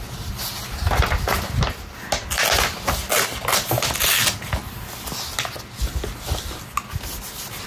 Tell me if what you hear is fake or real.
real